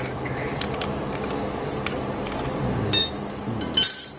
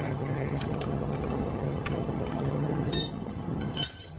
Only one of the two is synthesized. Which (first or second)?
second